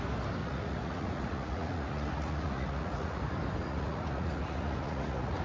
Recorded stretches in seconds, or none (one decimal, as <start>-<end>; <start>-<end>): 0.0-0.4; 3.2-3.6